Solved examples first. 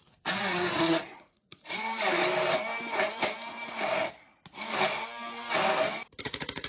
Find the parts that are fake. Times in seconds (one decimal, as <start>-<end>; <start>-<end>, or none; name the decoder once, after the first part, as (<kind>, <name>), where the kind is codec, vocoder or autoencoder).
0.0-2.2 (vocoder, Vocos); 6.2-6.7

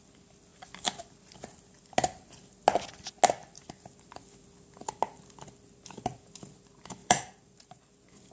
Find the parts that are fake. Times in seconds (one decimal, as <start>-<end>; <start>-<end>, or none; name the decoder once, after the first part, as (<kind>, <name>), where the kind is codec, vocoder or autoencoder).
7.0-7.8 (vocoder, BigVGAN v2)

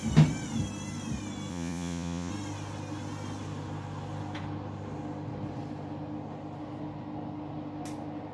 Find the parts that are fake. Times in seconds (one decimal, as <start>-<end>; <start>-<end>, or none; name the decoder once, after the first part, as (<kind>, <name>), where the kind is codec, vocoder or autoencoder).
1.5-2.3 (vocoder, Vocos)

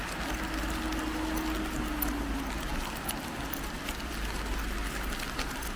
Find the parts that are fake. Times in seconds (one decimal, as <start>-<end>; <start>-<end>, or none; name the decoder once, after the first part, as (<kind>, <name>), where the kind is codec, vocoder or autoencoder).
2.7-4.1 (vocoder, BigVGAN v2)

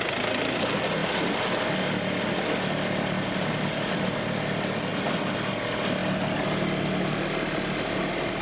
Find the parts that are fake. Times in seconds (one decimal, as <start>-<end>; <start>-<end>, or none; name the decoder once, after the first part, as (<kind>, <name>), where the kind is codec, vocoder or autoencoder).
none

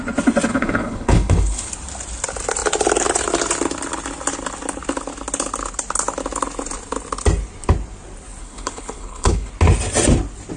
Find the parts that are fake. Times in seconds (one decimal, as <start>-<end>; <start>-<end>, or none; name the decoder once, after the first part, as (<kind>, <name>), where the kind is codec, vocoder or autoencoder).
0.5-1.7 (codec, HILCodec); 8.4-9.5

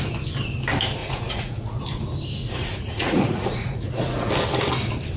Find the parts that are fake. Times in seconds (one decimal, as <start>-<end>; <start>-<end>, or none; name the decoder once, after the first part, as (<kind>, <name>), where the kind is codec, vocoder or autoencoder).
1.0-1.8 (vocoder, Vocos); 2.4-4.3

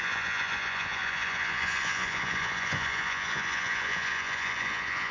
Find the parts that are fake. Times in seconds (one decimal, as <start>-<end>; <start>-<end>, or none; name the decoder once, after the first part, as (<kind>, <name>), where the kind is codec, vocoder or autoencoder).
0.0-5.1 (vocoder, Vocos)